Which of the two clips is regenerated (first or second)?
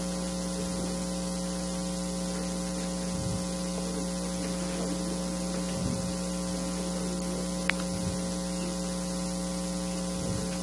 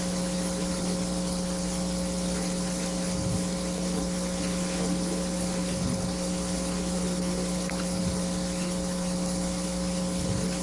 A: second